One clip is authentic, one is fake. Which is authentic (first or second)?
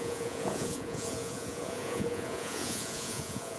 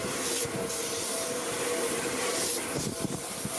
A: second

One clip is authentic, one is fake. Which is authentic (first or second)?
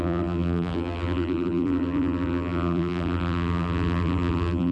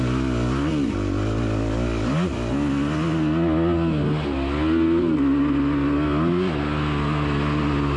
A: second